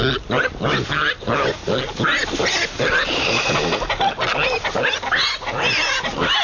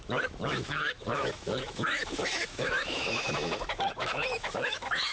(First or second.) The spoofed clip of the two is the second